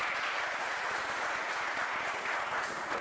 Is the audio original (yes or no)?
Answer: no